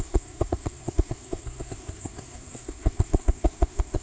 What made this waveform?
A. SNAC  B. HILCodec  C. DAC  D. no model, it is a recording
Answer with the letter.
A